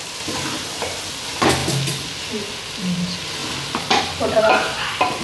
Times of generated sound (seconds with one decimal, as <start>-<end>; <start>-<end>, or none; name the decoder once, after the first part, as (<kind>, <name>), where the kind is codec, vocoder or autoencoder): none